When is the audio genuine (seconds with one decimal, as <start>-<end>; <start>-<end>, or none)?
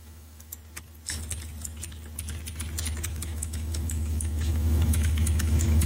0.5-3.1